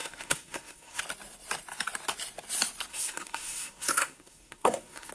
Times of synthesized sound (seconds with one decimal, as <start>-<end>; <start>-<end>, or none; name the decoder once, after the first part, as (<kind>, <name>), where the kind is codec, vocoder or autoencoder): 0.0-1.0 (codec, SNAC); 2.9-5.1